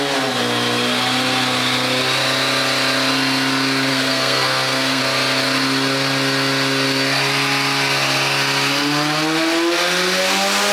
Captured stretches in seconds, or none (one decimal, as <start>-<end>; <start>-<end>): 0.0-3.9; 5.0-10.7

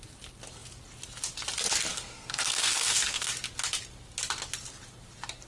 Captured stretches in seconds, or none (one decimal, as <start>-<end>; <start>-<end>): 0.0-1.9; 3.3-5.5

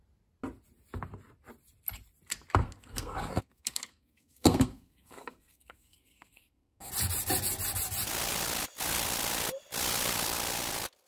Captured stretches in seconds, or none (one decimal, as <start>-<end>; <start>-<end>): 0.0-2.6; 6.9-11.1

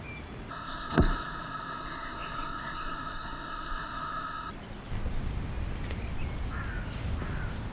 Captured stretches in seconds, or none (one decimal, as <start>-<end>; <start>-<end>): 0.0-0.5; 4.5-7.7

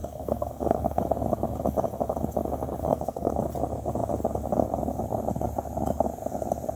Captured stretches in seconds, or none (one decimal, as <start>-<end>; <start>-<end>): 1.0-2.8; 3.4-6.8

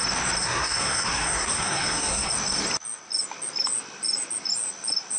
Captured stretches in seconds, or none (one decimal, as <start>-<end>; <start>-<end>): 0.0-0.4; 2.3-5.2

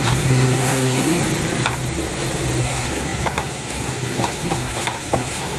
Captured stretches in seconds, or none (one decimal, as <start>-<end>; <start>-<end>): 1.2-2.6

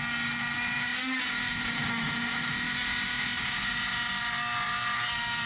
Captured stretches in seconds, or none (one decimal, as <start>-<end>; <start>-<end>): 0.0-5.5